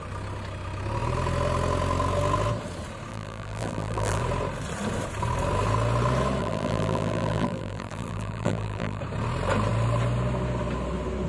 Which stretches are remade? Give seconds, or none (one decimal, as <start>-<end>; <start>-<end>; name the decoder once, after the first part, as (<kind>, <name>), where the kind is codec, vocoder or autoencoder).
3.1-4.2 (vocoder, BigVGAN v2); 6.4-9.0